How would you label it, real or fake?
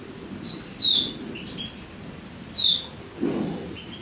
real